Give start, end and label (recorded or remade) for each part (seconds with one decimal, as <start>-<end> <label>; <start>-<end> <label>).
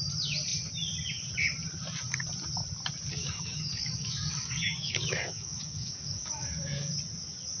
0.0-3.1 recorded; 3.1-6.9 remade; 6.9-7.6 recorded